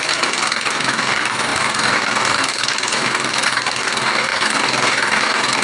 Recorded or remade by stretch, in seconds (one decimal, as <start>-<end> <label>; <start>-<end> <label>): 0.0-5.6 remade